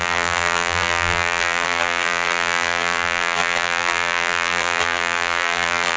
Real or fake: fake